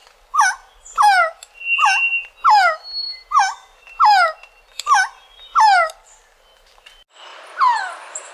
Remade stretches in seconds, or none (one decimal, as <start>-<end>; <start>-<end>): 7.3-7.8